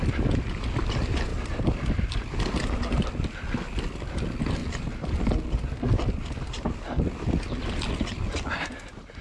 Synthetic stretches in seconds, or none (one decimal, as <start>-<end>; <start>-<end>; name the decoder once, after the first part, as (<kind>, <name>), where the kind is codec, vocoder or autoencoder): 1.3-2.6 (vocoder, BigVGAN v2); 4.6-5.8